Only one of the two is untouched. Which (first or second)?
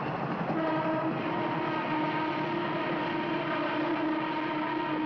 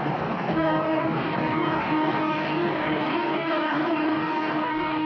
first